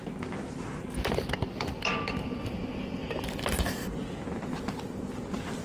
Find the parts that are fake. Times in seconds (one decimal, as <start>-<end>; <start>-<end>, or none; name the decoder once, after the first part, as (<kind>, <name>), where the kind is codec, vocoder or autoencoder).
none